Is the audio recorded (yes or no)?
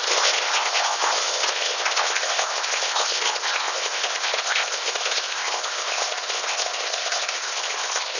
no